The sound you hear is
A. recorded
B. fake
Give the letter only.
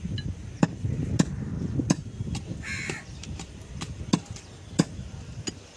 A